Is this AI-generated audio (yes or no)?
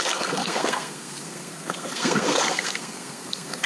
yes